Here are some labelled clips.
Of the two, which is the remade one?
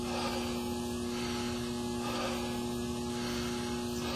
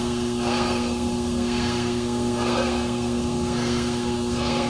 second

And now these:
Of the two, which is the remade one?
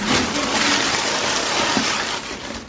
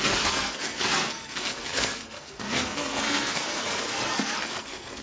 second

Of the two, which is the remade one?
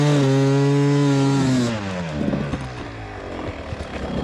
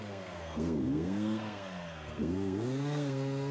second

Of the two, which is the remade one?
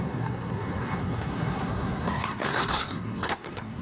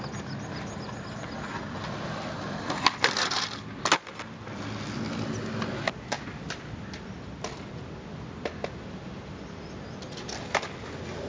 first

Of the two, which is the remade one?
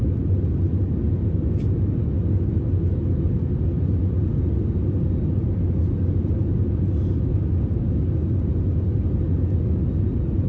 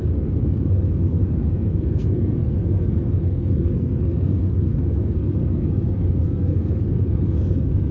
second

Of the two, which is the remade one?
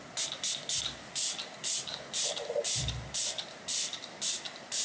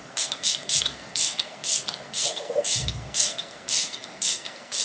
second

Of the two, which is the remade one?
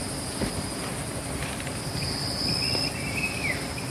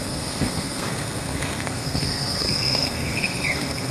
second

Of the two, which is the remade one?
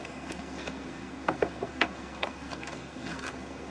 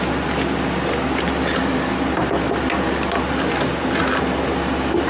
first